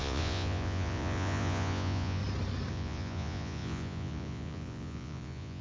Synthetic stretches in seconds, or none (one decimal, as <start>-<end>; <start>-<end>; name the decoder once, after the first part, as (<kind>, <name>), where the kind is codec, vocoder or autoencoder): 0.0-2.2 (vocoder, Vocos); 2.7-5.6